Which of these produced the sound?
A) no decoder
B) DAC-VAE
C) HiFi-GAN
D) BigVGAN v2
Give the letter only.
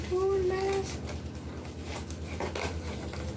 A